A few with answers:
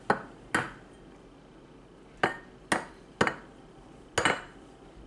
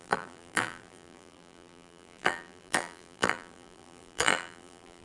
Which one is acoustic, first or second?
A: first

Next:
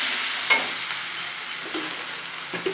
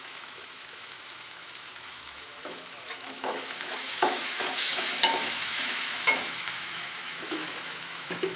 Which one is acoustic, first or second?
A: first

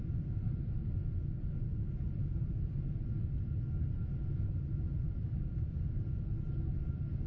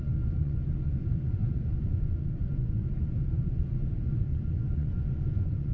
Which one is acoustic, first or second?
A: first